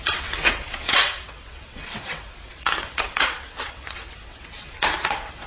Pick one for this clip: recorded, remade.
remade